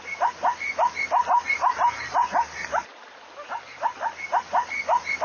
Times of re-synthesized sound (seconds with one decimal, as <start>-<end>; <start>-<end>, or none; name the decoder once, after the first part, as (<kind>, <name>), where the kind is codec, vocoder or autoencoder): none